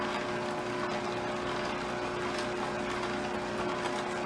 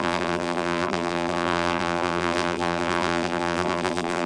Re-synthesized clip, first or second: second